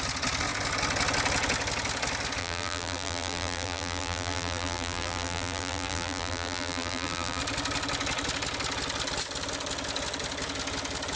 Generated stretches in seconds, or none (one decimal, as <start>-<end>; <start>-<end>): 2.4-7.4